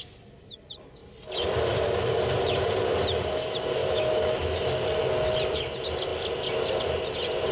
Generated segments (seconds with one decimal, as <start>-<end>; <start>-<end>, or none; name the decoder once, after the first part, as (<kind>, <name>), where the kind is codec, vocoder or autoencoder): 3.8-4.7 (autoencoder, DAC-VAE)